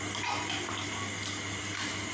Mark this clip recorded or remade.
recorded